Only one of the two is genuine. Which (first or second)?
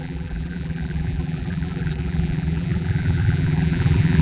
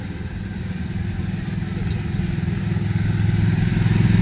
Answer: second